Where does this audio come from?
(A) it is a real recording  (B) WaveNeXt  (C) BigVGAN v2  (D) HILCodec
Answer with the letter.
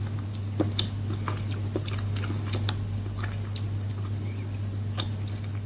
C